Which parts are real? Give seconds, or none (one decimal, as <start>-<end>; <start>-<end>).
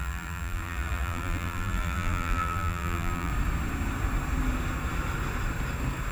3.3-6.1